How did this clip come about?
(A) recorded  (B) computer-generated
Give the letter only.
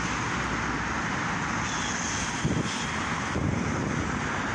A